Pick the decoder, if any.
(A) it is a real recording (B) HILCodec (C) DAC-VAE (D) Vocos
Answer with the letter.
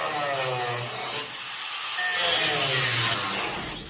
A